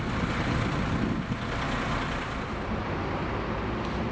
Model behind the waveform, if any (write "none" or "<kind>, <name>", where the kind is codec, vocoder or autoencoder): none